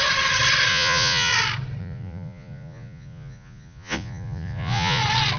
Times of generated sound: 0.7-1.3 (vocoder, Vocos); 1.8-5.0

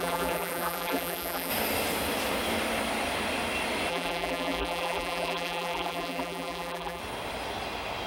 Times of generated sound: 0.0-1.5 (vocoder, BigVGAN v2); 3.9-7.0

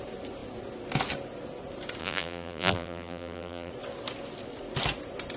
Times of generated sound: 2.0-3.7 (vocoder, BigVGAN v2)